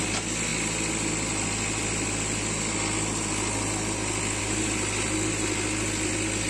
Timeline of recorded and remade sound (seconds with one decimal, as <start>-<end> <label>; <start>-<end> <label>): 0.0-6.5 recorded